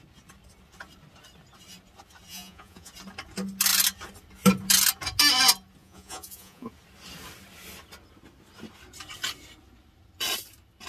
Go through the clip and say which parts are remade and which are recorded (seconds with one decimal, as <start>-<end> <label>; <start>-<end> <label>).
0.0-2.3 recorded; 2.3-2.9 remade; 2.9-5.8 recorded; 5.8-6.7 remade; 6.7-10.9 recorded